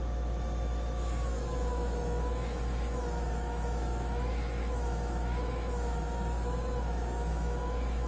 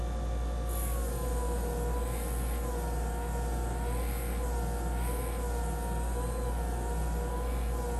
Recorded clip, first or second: second